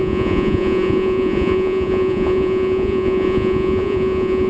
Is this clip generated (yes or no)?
yes